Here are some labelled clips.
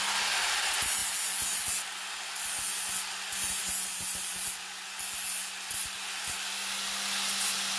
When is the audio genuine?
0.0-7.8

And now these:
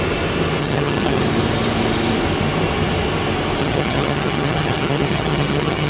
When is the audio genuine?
0.0-0.6; 1.2-3.6